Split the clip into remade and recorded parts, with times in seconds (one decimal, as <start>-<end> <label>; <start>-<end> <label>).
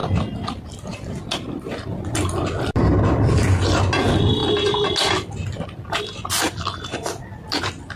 0.0-8.0 recorded